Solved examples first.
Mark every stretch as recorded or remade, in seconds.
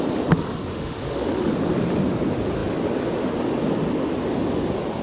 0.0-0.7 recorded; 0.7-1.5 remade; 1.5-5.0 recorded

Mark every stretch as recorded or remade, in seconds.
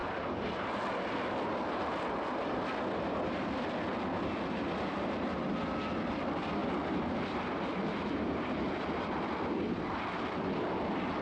0.0-11.2 recorded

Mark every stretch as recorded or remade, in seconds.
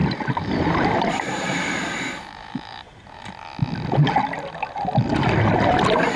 0.0-3.2 remade; 3.2-6.2 recorded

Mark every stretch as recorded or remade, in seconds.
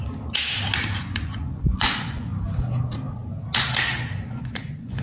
0.0-1.0 recorded; 1.0-2.3 remade; 2.3-4.3 recorded; 4.3-5.0 remade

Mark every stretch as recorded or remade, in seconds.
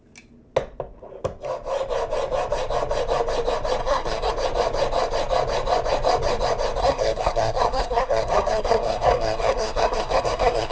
0.0-3.8 recorded; 3.8-4.3 remade; 4.3-6.8 recorded; 6.8-10.7 remade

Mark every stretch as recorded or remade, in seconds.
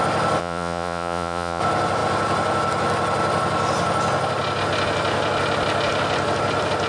0.0-0.4 recorded; 0.4-1.6 remade; 1.6-6.9 recorded